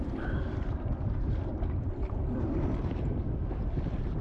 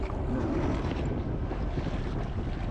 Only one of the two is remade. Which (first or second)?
first